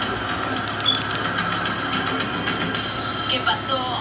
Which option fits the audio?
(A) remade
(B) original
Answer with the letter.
B